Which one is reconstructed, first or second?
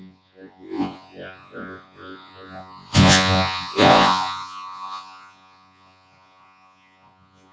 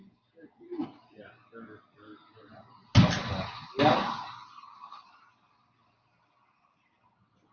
first